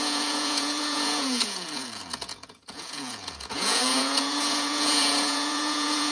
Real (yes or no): no